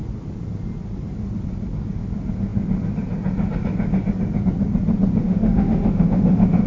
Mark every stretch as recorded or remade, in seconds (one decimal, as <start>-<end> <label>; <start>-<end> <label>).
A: 0.0-5.2 recorded; 5.2-6.7 remade